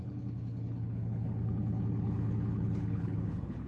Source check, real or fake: fake